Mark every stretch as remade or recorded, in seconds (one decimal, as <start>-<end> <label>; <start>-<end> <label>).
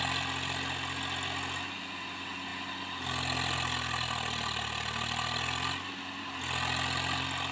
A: 0.0-7.5 recorded